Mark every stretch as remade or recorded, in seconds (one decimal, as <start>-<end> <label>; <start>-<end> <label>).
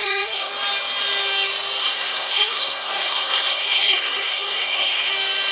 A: 0.0-0.5 remade; 0.5-1.8 recorded; 1.8-5.1 remade; 5.1-5.5 recorded